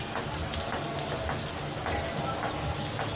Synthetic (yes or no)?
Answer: no